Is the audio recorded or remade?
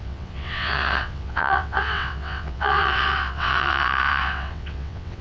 remade